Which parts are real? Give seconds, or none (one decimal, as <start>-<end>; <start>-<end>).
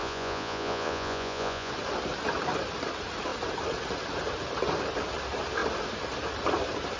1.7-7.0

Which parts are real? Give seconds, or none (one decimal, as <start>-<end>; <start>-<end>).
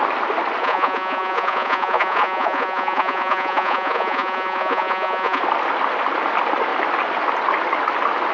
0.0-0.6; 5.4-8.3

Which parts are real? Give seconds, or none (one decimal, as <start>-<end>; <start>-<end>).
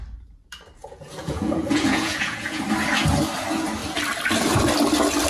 0.0-0.8; 2.6-5.3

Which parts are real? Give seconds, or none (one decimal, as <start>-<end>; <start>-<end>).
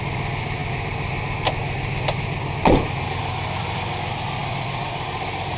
0.0-5.6